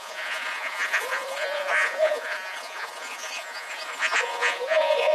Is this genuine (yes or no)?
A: no